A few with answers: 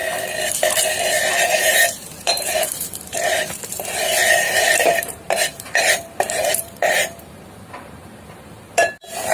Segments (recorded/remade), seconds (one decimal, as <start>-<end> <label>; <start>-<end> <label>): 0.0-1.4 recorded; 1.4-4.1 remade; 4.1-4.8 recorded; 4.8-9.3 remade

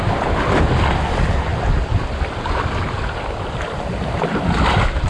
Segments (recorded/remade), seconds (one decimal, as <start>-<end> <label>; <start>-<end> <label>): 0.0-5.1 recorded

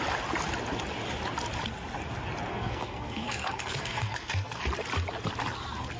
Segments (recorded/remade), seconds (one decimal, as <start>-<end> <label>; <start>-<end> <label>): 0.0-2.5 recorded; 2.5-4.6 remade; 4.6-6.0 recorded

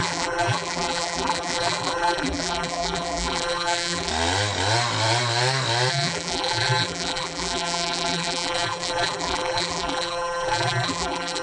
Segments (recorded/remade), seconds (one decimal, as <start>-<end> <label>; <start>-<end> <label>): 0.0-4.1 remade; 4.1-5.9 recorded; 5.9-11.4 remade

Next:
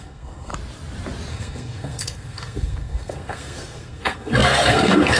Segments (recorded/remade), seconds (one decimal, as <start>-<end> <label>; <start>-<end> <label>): 0.0-0.5 remade; 0.5-1.3 recorded; 1.3-5.2 remade

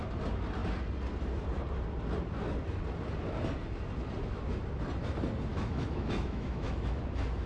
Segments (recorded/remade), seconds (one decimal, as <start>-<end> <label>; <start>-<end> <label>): 0.0-5.5 recorded; 5.5-7.0 remade; 7.0-7.5 recorded

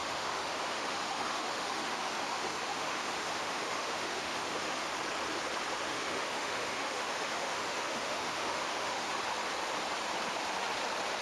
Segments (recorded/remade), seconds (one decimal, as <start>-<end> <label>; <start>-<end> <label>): 0.0-4.9 remade; 4.9-5.9 recorded; 5.9-9.2 remade; 9.2-11.2 recorded